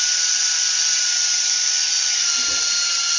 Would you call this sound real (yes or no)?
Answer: yes